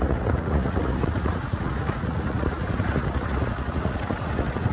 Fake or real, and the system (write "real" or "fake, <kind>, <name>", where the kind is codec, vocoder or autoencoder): fake, vocoder, Vocos